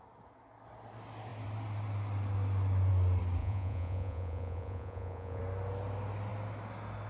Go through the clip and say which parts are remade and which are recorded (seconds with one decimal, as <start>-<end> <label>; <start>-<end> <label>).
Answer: 0.0-3.4 recorded; 3.4-5.4 remade; 5.4-7.1 recorded